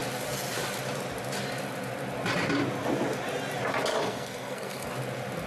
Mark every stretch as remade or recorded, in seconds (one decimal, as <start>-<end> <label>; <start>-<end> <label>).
0.0-3.9 recorded; 3.9-4.9 remade; 4.9-5.5 recorded